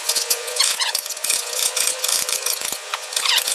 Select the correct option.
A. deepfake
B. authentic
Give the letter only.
A